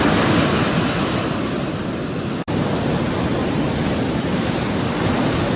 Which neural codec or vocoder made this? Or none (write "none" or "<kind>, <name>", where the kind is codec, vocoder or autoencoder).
none